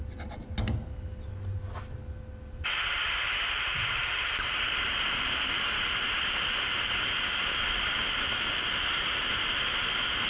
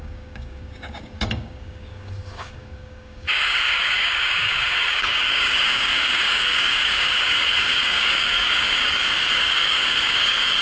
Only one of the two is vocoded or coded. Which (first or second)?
second